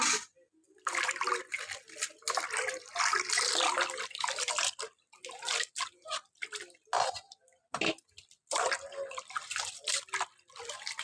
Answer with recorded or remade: recorded